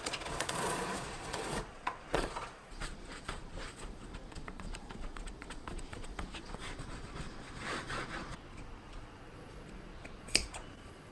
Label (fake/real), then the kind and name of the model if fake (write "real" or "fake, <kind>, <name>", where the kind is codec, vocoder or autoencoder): fake, vocoder, Vocos